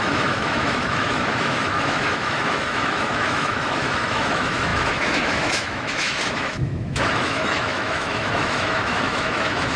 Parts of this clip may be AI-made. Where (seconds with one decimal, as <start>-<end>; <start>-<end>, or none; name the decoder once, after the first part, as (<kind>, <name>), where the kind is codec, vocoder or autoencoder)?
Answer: 0.0-9.8 (autoencoder, DAC-VAE)